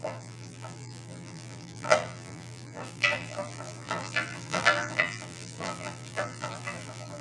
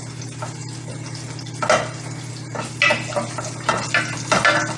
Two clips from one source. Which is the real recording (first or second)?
second